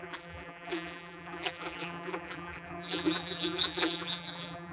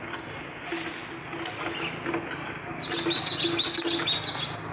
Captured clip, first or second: second